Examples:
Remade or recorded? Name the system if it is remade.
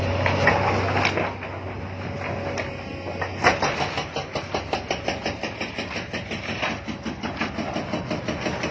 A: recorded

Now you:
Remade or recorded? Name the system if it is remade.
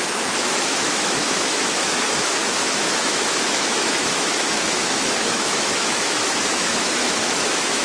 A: remade, autoencoder, DAC-VAE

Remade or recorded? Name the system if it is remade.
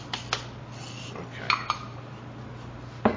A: recorded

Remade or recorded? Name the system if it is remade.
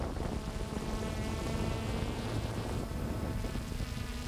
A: recorded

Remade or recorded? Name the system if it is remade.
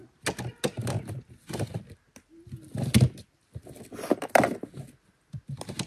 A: recorded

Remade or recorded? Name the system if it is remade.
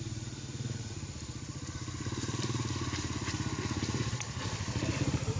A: recorded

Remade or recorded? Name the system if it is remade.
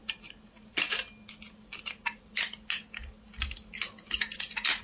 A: recorded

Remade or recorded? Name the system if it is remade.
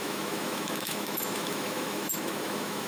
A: remade, autoencoder, DAC-VAE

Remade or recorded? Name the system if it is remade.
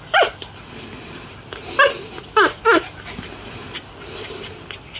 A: recorded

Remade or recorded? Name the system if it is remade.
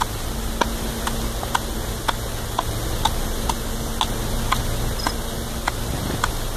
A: recorded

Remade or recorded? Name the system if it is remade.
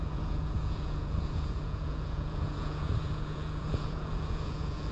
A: remade, vocoder, Vocos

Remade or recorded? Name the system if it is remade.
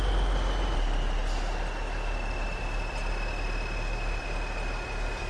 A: recorded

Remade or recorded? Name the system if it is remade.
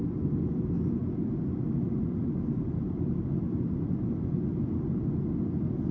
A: recorded